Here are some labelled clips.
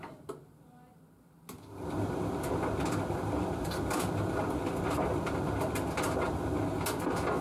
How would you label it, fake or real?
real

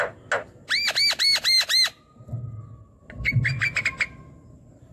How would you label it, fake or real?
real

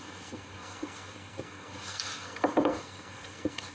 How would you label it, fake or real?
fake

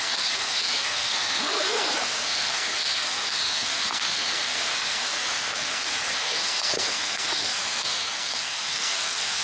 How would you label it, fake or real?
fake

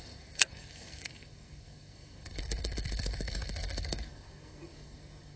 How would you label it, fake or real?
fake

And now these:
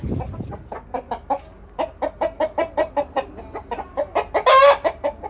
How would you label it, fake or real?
real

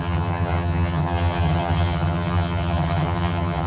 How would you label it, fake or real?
fake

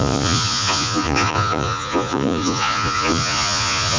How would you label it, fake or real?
fake